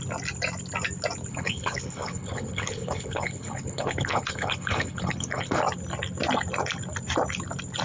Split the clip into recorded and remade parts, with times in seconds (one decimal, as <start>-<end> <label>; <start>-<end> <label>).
0.0-1.3 recorded; 1.3-5.6 remade; 5.6-7.8 recorded